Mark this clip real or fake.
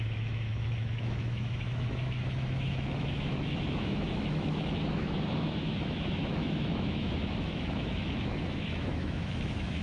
fake